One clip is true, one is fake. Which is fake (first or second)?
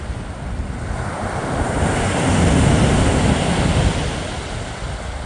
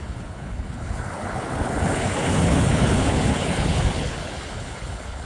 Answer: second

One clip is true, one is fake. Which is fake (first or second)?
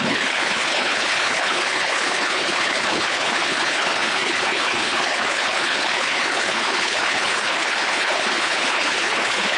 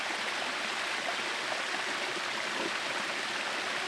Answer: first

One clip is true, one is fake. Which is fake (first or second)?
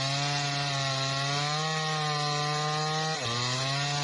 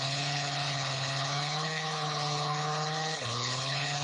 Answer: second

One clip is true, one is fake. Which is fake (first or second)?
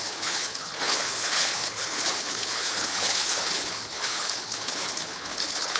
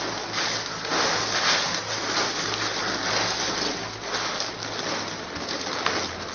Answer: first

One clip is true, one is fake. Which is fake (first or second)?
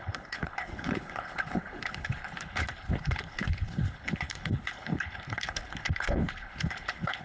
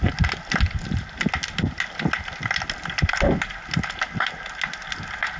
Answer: first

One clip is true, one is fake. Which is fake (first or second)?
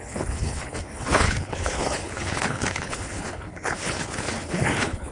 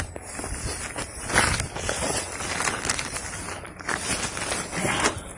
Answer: first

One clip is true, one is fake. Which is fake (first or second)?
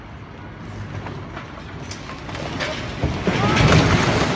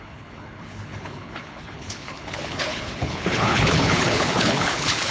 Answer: second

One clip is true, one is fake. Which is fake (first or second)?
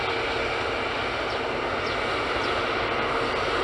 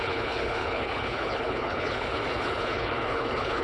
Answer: second